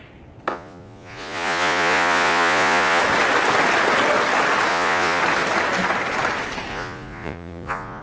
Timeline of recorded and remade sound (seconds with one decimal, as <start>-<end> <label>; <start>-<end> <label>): 0.0-0.5 recorded; 0.5-3.0 remade; 3.0-4.7 recorded; 4.7-5.2 remade; 5.2-6.7 recorded; 6.7-8.0 remade